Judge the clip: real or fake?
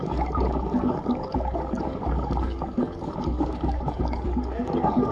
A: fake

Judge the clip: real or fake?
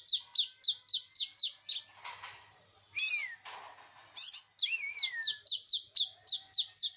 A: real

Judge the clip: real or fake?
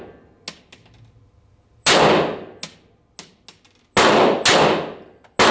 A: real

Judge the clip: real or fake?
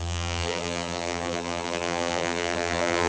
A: fake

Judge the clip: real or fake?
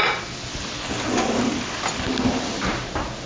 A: real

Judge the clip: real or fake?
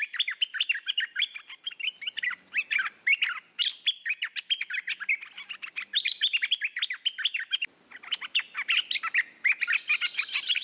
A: real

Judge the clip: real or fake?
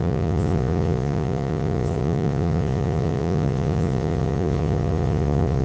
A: fake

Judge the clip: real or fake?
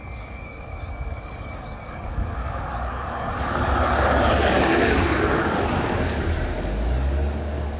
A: fake